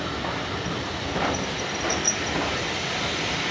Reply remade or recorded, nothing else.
recorded